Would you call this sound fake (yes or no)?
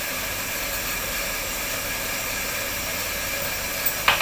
no